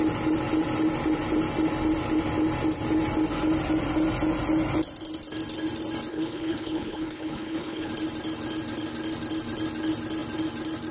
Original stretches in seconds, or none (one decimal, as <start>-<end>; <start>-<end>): 0.0-6.1; 7.9-10.9